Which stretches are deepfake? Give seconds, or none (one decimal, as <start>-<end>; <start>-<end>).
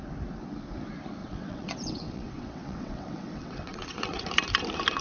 1.2-4.2